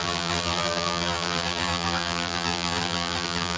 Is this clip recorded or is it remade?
remade